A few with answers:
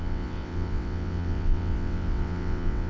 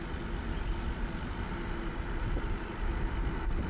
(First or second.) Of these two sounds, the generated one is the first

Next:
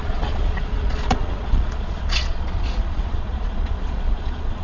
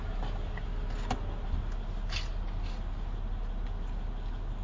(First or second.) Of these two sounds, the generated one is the first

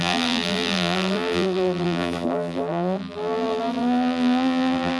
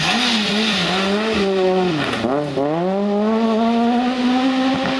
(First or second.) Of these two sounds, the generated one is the first